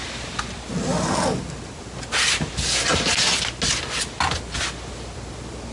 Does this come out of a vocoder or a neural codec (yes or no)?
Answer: no